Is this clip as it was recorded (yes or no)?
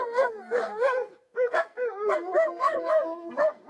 no